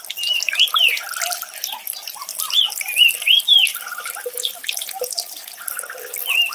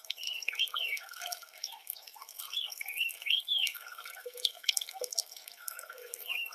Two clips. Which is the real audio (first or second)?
first